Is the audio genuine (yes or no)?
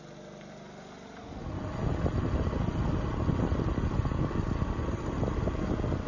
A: yes